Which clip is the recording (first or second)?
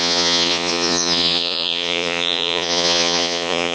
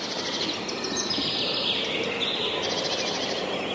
second